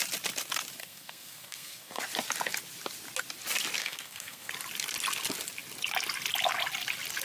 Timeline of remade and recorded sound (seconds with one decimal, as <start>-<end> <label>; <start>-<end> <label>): 0.0-0.8 recorded; 0.8-2.0 remade; 2.0-3.8 recorded; 3.8-4.5 remade; 4.5-7.2 recorded